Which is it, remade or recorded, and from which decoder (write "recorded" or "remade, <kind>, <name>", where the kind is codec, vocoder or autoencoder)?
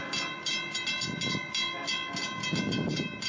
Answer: recorded